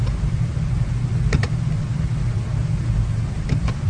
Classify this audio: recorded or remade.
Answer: recorded